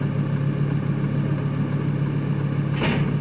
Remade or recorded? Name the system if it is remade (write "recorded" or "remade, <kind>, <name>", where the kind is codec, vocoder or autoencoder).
recorded